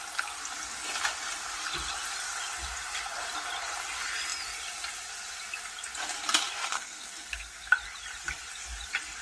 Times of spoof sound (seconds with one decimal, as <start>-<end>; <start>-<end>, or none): 6.7-7.7